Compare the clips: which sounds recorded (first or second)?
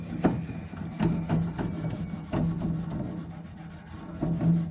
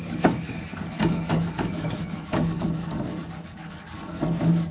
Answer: first